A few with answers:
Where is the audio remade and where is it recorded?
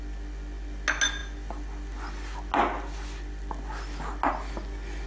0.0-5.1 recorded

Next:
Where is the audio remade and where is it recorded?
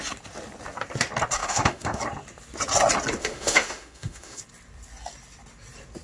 0.0-1.4 recorded; 1.4-2.0 remade; 2.0-3.2 recorded; 3.2-4.4 remade; 4.4-6.0 recorded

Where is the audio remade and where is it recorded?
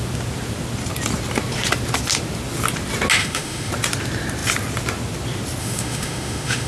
0.0-3.2 recorded; 3.2-3.7 remade; 3.7-5.6 recorded; 5.6-6.7 remade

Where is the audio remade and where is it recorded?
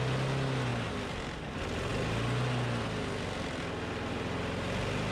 0.0-5.1 recorded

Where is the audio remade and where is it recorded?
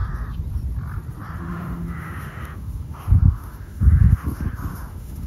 0.0-1.4 recorded; 1.4-5.3 remade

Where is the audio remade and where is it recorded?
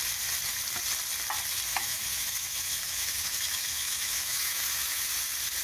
0.0-1.7 recorded; 1.7-5.1 remade; 5.1-5.6 recorded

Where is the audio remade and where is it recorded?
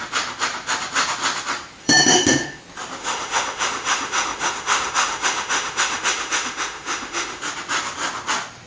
0.0-1.8 recorded; 1.8-2.6 remade; 2.6-3.0 recorded; 3.0-7.4 remade; 7.4-8.7 recorded